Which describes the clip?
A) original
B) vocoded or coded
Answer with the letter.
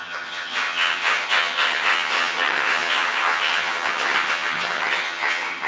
B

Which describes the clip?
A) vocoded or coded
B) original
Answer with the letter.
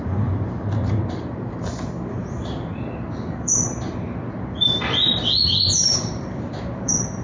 A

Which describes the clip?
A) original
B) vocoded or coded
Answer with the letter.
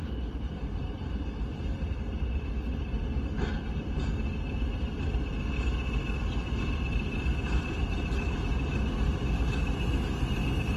A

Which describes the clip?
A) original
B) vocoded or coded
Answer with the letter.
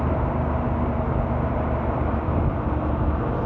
A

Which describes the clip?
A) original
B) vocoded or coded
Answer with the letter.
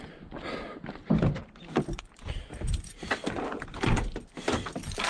A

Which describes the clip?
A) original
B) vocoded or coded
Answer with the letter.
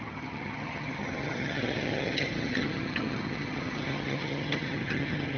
B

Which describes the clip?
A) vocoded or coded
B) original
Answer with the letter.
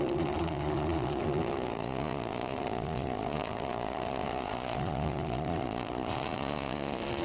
A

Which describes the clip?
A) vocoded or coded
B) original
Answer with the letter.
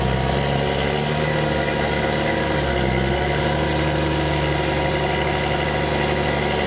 B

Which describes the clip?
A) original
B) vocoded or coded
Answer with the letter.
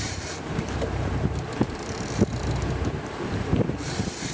B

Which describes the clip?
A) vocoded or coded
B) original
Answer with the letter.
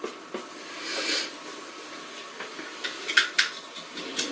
B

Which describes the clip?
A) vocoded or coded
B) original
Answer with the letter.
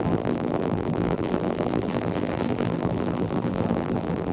A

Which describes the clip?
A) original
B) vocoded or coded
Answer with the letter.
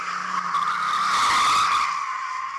A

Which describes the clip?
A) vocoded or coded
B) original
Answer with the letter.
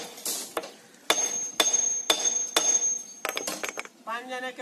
B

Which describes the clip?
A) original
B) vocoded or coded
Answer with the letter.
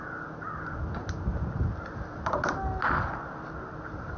A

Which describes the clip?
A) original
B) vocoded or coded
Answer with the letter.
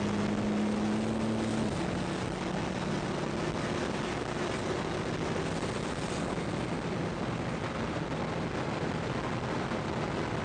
A